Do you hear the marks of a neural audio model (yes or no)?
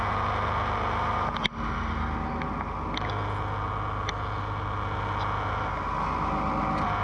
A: no